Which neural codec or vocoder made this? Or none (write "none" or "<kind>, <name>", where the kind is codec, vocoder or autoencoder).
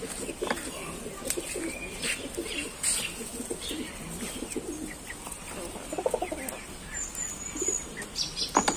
none